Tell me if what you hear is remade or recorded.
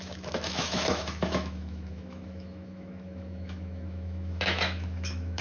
remade